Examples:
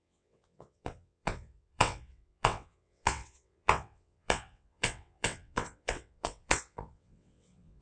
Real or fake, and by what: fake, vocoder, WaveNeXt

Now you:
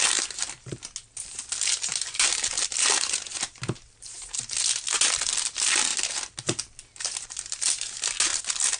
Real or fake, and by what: real